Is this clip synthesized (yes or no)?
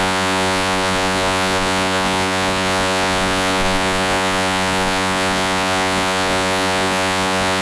yes